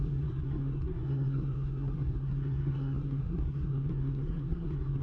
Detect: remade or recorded remade